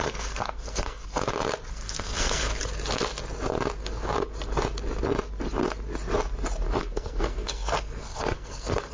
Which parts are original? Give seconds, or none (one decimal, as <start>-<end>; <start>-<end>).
1.1-1.7; 2.5-6.8